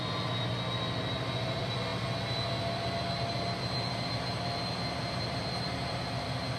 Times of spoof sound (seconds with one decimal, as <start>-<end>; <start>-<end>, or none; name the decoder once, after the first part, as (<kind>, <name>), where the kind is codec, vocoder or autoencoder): none